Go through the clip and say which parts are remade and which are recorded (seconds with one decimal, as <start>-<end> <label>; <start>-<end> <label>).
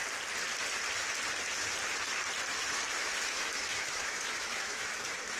0.0-2.5 recorded; 2.5-5.4 remade